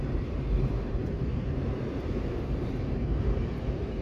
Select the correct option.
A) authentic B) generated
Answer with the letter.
B